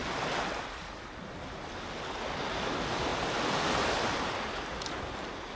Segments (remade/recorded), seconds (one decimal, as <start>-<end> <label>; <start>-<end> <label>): 0.0-5.6 recorded